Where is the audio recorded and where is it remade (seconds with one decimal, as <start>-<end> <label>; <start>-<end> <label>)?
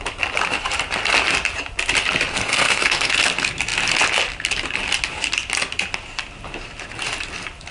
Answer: 0.0-2.3 recorded; 2.3-3.1 remade; 3.1-7.7 recorded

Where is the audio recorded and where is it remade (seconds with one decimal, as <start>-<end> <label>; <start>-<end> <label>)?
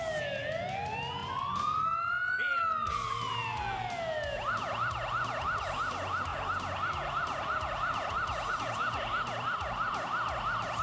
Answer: 0.0-10.8 recorded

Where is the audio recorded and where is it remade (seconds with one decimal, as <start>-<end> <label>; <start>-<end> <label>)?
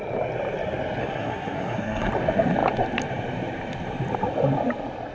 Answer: 0.0-1.0 recorded; 1.0-2.1 remade; 2.1-5.1 recorded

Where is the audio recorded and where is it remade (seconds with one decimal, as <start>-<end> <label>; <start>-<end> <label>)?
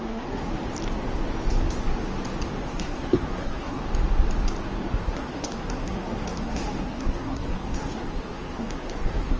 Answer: 0.0-0.5 remade; 0.5-2.7 recorded; 2.7-3.8 remade; 3.8-5.0 recorded; 5.0-9.4 remade